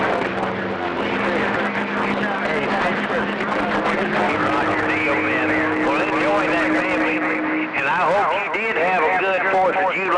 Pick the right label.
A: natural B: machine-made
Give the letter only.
A